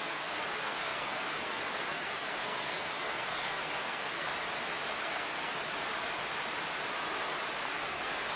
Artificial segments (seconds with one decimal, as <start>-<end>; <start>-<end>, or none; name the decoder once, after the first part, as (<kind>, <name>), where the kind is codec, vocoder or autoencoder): 0.0-4.3 (codec, SNAC); 4.9-5.5; 7.6-8.4